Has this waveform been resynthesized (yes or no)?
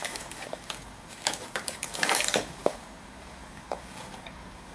yes